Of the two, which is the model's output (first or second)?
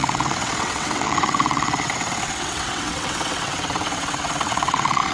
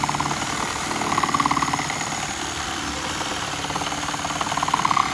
first